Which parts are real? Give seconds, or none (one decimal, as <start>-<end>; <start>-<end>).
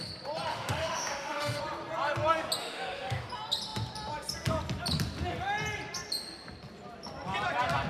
0.0-0.5; 1.6-2.6; 3.3-7.9